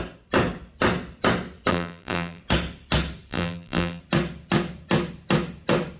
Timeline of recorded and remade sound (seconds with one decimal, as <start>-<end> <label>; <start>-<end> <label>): 0.0-1.7 recorded; 1.7-2.4 remade; 2.4-3.3 recorded; 3.3-4.0 remade; 4.0-6.0 recorded